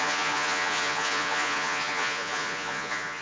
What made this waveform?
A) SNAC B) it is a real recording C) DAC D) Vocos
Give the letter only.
D